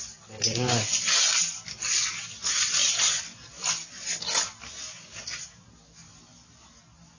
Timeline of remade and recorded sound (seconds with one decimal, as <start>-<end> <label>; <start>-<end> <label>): 0.0-7.2 recorded